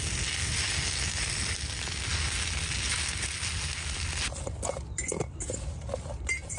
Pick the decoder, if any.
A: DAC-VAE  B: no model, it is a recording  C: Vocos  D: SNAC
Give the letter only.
B